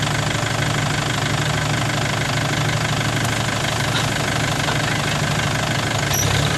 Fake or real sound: real